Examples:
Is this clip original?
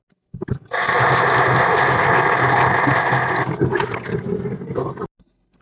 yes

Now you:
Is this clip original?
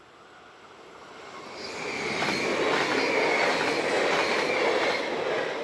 yes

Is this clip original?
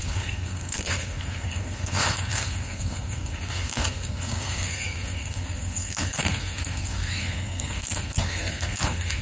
no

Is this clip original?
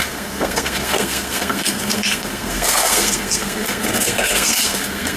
no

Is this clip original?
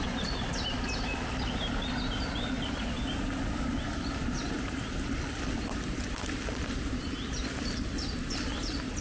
yes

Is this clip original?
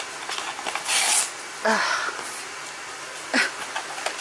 yes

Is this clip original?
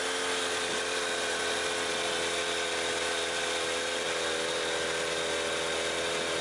yes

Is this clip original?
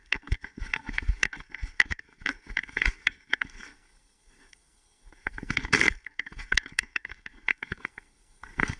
no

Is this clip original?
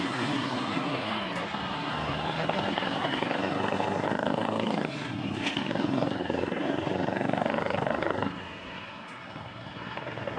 no